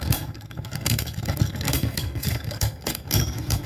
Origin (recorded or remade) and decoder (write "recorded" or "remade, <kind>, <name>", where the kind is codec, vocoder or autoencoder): remade, codec, SNAC